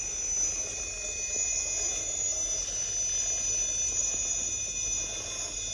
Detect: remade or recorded recorded